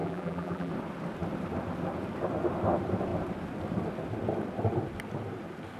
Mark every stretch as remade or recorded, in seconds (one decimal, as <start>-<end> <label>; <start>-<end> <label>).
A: 0.0-0.7 remade; 0.7-5.8 recorded